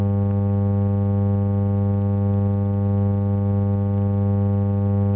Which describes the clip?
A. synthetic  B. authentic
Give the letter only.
B